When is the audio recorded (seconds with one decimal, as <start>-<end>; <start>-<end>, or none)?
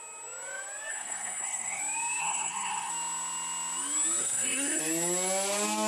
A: 0.0-0.9; 1.8-2.2; 2.9-4.2; 4.8-5.9